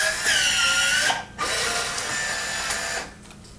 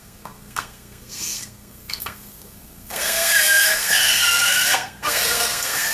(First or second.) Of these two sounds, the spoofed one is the second